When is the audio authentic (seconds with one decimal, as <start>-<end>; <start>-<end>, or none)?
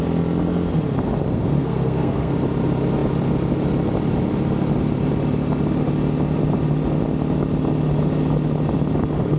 0.0-1.3; 2.3-9.4